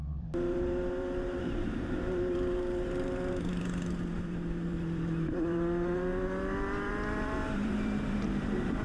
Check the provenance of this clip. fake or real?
fake